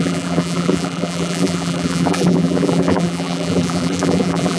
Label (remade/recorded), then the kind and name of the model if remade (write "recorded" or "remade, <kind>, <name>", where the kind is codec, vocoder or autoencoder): remade, vocoder, BigVGAN v2